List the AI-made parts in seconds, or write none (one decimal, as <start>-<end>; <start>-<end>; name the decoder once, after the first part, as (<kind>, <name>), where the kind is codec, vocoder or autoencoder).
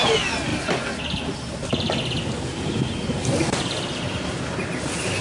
none